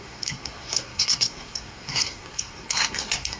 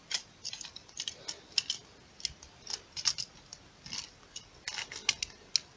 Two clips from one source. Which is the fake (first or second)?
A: first